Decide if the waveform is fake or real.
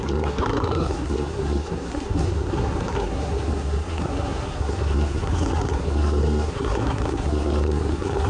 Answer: fake